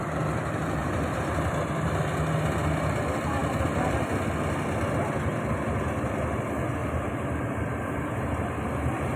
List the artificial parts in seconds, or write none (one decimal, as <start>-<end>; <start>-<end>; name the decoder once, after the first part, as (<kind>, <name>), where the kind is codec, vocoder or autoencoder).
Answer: 0.8-1.5 (vocoder, BigVGAN v2); 6.8-9.2